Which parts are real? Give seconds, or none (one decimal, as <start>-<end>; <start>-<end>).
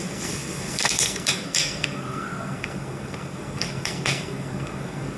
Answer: none